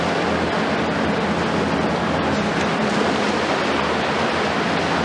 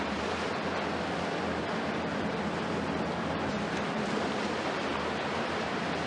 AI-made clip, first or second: second